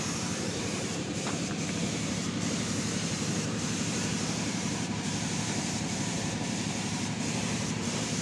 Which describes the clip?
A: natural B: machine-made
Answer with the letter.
B